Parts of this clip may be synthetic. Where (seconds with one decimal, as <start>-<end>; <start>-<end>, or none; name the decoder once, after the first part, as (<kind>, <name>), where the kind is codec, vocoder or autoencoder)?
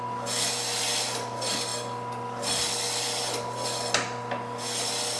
none